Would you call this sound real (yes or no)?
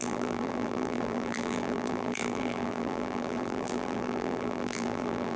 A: no